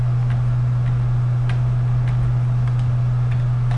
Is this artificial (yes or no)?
no